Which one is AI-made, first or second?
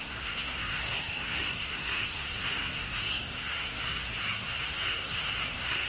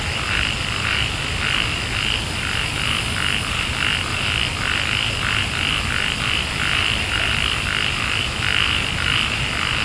first